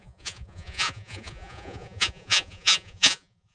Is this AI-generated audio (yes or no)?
yes